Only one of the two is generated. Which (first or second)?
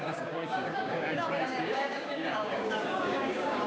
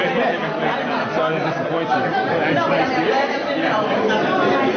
first